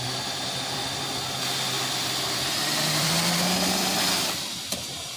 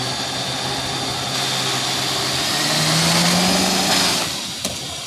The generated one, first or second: first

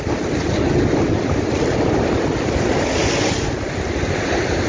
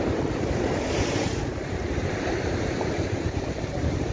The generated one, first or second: second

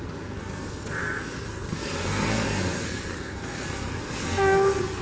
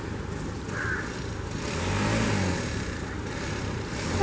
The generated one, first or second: first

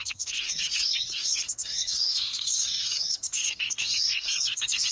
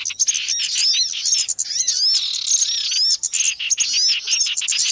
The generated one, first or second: first